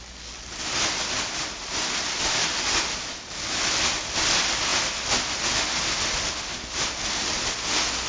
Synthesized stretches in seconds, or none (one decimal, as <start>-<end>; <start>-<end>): none